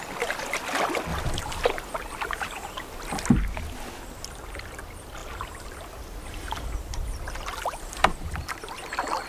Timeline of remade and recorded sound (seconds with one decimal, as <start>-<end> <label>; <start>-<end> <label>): 0.0-1.1 recorded; 1.1-3.3 remade; 3.3-5.2 recorded; 5.2-8.8 remade; 8.8-9.3 recorded